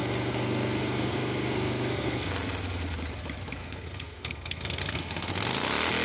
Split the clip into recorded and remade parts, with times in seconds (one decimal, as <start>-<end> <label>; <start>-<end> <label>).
0.0-2.3 remade; 2.3-3.6 recorded; 3.6-5.3 remade; 5.3-6.0 recorded